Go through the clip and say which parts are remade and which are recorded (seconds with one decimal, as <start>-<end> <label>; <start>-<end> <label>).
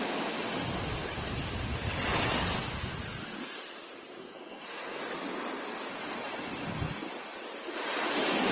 0.0-4.2 recorded; 4.2-5.0 remade; 5.0-8.5 recorded